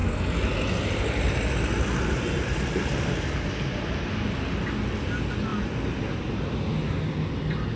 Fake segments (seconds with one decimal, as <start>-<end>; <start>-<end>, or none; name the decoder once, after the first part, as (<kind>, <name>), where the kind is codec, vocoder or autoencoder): none